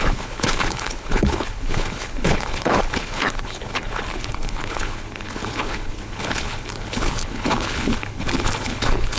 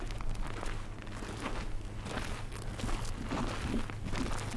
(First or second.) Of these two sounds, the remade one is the first